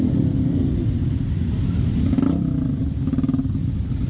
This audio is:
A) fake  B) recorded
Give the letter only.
B